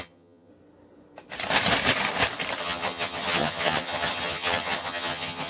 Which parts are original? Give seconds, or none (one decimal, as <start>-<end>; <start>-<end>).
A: 0.5-2.6